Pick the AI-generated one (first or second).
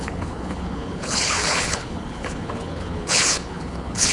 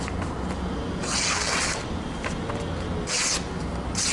first